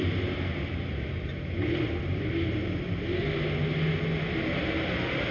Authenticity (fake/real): real